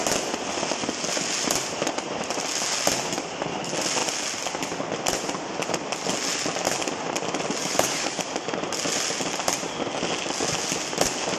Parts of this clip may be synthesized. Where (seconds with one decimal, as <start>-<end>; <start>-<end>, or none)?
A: 7.6-8.2